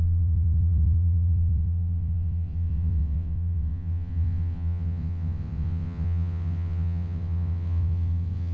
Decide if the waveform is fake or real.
fake